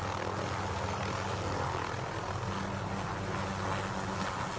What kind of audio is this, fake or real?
real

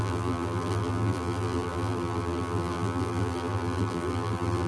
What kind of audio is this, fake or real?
fake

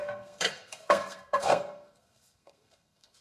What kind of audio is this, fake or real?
fake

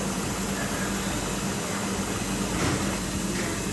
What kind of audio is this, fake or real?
real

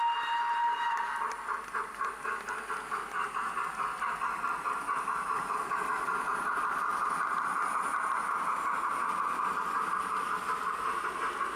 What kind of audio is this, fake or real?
real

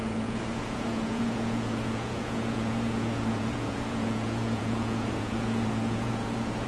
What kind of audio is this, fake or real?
fake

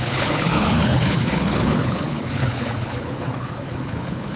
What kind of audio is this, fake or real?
fake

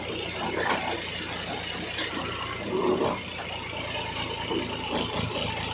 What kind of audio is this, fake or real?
real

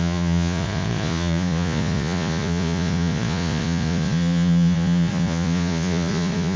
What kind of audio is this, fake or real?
fake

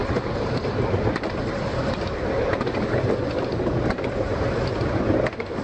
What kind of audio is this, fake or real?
real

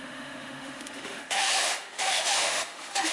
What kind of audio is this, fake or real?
fake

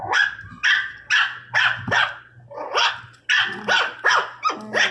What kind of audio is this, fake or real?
real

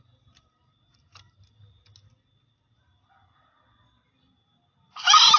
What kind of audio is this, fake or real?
real